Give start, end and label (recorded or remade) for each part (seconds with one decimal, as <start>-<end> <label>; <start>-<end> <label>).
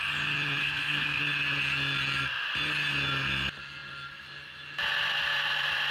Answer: 0.0-0.6 recorded; 0.6-1.2 remade; 1.2-5.9 recorded